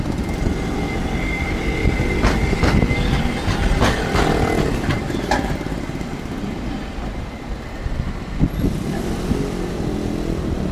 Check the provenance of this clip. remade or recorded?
recorded